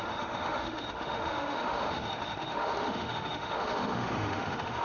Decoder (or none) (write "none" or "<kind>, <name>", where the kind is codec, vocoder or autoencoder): autoencoder, DAC-VAE